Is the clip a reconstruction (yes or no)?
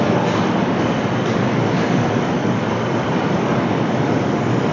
yes